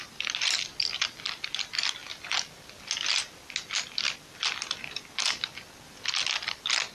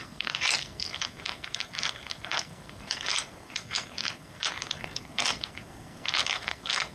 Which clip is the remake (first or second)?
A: second